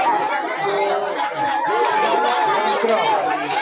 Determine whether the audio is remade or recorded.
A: recorded